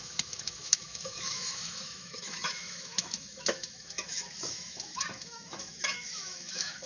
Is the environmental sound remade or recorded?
remade